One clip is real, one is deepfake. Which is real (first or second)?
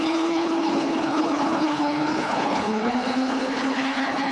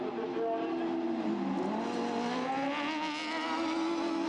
second